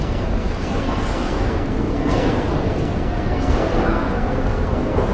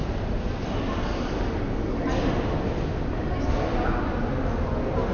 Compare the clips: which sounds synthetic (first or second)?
first